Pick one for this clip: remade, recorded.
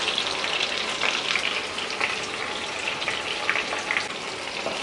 recorded